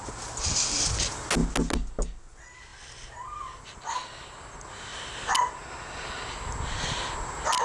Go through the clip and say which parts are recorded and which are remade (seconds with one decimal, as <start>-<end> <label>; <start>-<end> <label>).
0.0-7.6 recorded